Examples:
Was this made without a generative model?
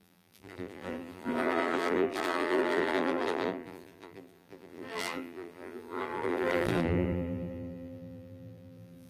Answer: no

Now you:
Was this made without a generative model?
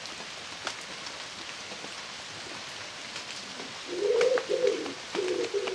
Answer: yes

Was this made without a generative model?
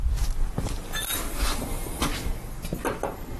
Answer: yes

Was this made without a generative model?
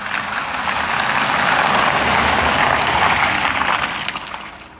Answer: yes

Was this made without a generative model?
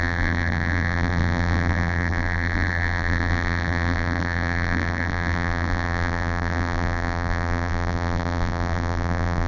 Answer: no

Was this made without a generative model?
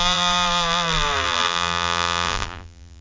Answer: no